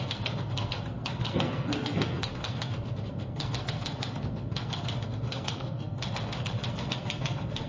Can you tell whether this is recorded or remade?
remade